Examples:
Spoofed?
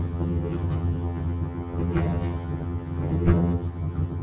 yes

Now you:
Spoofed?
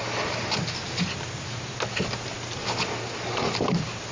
no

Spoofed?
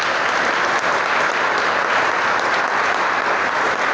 no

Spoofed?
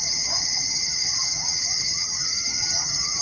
yes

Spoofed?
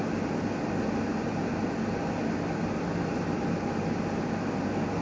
no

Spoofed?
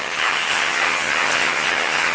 yes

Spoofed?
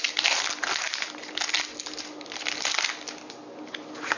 no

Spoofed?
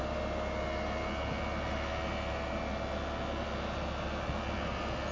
no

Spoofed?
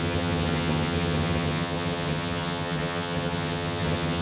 yes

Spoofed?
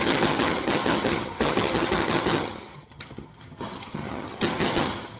yes